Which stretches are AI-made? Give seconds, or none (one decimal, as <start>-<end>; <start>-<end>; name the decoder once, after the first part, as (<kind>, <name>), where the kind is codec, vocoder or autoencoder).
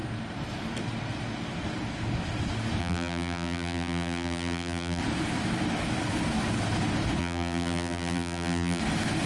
2.8-5.0 (vocoder, BigVGAN v2); 7.2-8.8